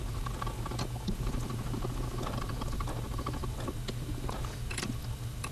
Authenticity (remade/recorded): recorded